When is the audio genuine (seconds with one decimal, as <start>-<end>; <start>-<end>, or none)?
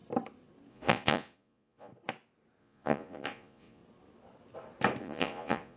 0.0-0.7; 1.9-2.6; 3.8-5.0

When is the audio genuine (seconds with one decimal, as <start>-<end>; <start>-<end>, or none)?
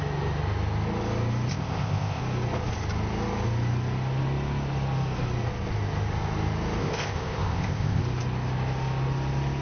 0.0-1.5; 2.2-6.8; 8.0-9.6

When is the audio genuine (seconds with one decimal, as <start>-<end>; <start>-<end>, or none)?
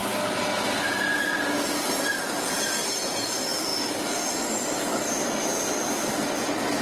0.0-6.8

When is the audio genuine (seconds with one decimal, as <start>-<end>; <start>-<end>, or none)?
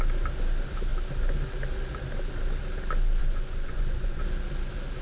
0.0-3.2; 4.2-5.0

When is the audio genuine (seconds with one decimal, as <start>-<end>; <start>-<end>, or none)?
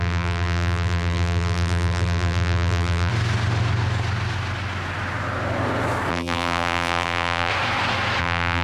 3.1-6.1; 7.5-8.2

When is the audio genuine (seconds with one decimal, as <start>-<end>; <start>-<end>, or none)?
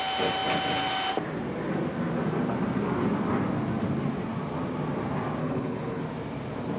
0.0-5.4; 6.0-6.8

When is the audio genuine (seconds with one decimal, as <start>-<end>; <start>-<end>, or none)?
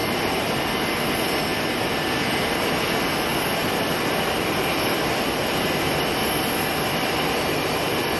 0.9-3.3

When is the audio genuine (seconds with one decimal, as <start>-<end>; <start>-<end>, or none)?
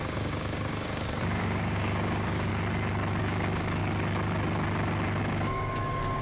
2.5-3.2; 3.8-5.2